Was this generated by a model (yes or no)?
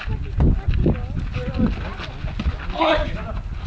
no